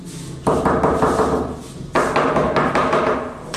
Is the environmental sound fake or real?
real